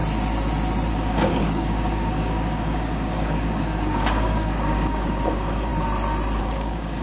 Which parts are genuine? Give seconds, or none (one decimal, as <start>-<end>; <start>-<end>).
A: 0.0-0.9; 5.7-6.4